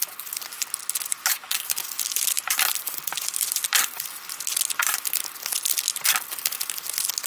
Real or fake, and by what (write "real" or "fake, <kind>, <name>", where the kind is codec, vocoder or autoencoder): real